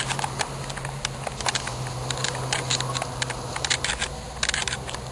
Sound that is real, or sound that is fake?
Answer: real